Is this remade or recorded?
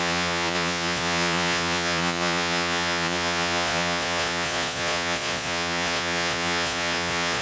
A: remade